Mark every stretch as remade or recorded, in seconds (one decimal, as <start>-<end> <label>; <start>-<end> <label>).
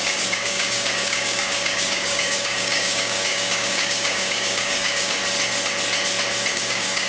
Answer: 0.0-5.2 remade; 5.2-6.5 recorded; 6.5-7.1 remade